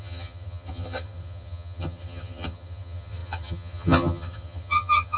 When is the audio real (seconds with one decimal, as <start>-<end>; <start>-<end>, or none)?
none

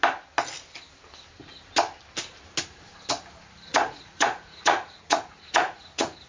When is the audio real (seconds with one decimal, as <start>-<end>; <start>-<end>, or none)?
0.0-3.7

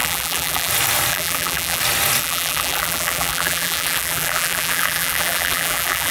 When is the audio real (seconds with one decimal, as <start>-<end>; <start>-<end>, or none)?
0.7-1.1; 1.8-2.2

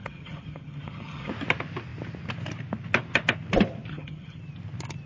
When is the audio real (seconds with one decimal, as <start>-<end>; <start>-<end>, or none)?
1.3-3.9; 4.4-5.1

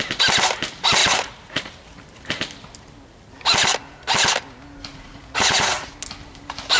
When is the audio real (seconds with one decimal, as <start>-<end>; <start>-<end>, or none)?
0.0-1.0; 1.6-4.9; 5.9-6.8

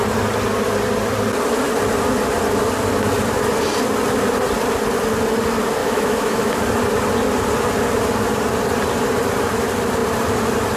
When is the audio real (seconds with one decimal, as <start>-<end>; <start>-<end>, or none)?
0.0-5.8; 6.6-10.8